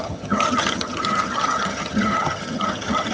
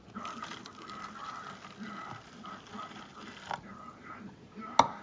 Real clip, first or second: second